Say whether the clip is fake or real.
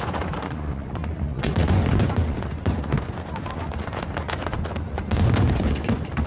fake